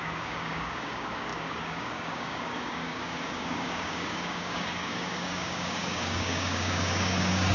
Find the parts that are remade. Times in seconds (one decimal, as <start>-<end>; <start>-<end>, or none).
0.0-7.5